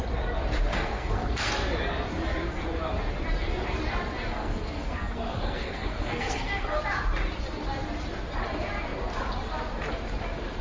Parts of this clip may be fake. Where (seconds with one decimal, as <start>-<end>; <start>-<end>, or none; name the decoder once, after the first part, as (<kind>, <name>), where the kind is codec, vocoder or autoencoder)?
0.7-1.5 (codec, SNAC); 4.3-6.8